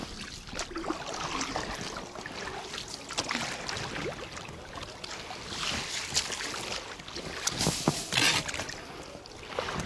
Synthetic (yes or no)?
no